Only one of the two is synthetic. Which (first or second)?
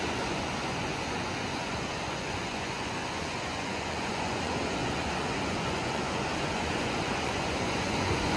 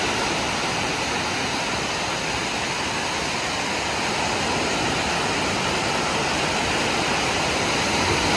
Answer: first